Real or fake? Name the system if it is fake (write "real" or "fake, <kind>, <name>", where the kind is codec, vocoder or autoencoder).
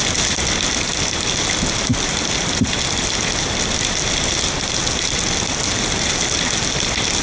real